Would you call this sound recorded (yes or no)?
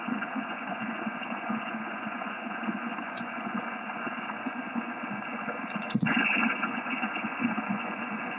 no